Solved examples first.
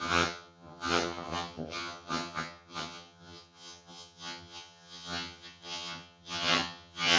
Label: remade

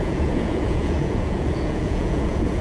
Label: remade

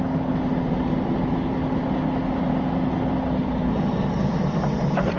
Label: recorded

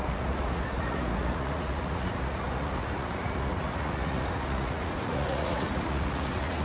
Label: remade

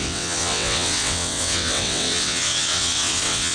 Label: remade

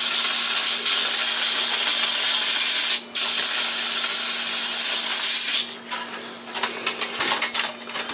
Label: recorded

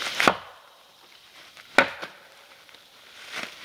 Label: recorded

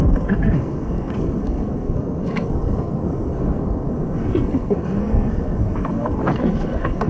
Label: remade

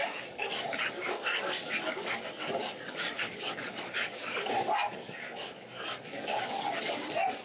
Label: remade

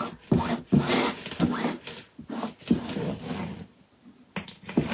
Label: recorded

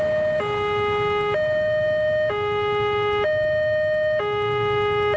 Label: recorded